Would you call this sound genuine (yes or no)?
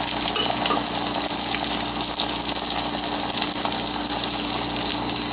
yes